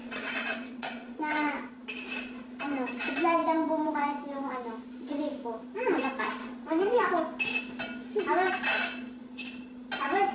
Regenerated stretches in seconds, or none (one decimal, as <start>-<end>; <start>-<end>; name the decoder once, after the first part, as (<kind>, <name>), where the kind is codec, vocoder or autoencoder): 0.0-1.7 (vocoder, WaveNeXt); 6.4-7.0